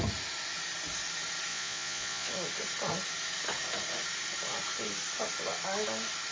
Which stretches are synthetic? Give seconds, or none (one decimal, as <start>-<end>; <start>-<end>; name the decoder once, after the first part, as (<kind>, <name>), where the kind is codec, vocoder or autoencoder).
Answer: 1.5-2.3 (vocoder, Vocos)